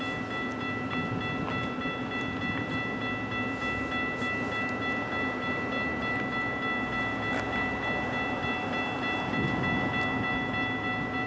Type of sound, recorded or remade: recorded